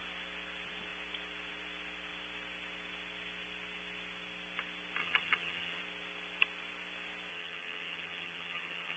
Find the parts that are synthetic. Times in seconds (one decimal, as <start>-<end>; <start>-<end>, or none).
5.0-5.8; 7.3-9.0